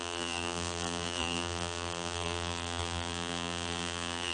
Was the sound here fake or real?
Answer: fake